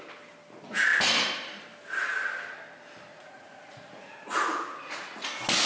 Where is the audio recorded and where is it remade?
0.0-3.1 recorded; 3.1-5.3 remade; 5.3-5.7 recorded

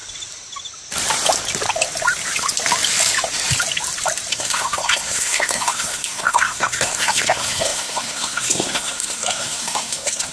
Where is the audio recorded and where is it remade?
0.0-4.3 recorded; 4.3-10.3 remade

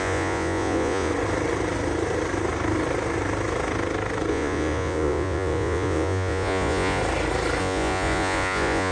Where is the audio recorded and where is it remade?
0.0-1.1 remade; 1.1-4.3 recorded; 4.3-7.0 remade; 7.0-7.6 recorded; 7.6-8.9 remade

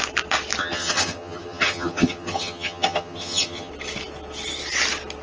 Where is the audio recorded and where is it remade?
0.0-0.6 recorded; 0.6-3.7 remade; 3.7-5.2 recorded

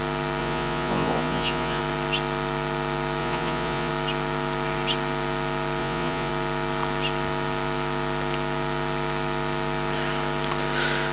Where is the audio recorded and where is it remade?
0.0-0.4 recorded; 0.4-1.8 remade; 1.8-3.2 recorded; 3.2-3.9 remade; 3.9-5.8 recorded; 5.8-6.3 remade; 6.3-11.1 recorded